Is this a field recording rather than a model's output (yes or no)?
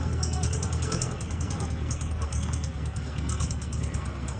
no